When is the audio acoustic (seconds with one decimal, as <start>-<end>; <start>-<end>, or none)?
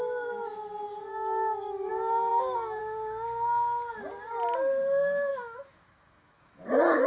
0.0-1.1; 1.9-2.3; 2.8-5.3; 6.6-7.1